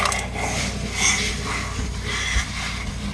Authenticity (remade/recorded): recorded